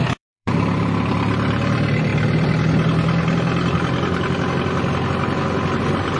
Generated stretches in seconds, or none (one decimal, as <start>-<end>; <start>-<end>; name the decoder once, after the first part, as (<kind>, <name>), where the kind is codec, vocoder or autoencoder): 0.0-2.1 (vocoder, BigVGAN v2); 5.8-6.2